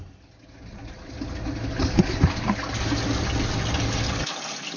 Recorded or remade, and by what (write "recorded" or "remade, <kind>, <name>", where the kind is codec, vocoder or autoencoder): recorded